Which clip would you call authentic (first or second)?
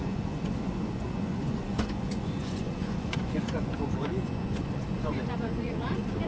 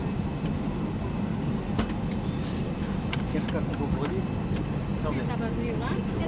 second